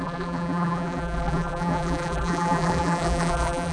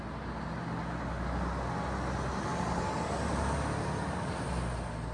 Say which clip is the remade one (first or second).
first